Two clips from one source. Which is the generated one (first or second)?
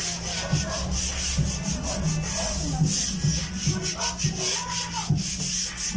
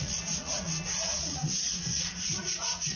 second